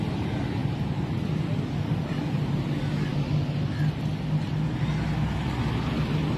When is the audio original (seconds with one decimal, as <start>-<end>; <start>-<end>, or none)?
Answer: 0.0-0.6; 2.2-6.4

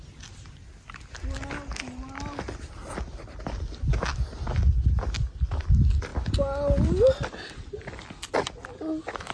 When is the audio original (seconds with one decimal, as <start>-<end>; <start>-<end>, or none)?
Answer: 0.0-9.3